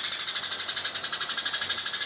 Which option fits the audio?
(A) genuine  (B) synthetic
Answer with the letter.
A